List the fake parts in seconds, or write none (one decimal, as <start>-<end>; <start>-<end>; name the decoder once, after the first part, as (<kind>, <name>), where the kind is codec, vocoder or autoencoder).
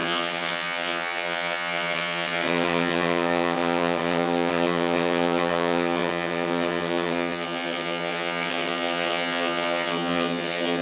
0.0-10.8 (vocoder, HiFi-GAN)